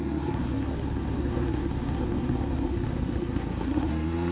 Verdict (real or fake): fake